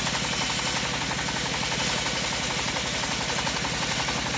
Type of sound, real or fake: real